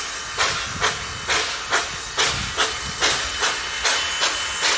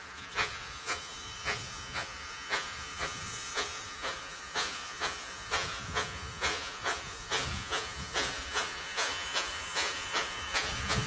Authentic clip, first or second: first